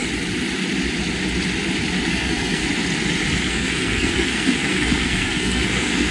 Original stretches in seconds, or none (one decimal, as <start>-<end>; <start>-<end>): 0.0-2.1; 2.6-3.5